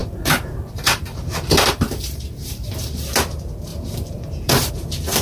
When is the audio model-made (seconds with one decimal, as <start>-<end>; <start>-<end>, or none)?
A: 0.0-3.1; 3.7-4.7